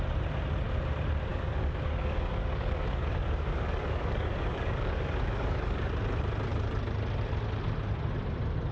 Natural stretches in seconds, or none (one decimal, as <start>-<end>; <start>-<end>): 0.0-1.3; 5.9-8.7